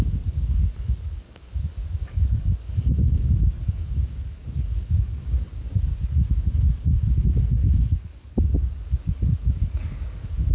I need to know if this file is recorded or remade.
remade